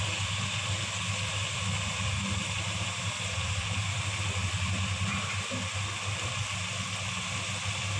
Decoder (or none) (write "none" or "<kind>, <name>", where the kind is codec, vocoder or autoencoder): none